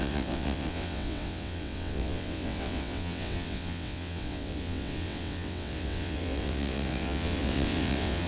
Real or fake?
fake